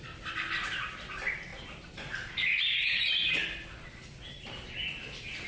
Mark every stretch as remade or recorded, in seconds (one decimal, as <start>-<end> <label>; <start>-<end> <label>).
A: 0.0-5.5 recorded